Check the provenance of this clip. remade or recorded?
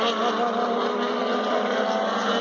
recorded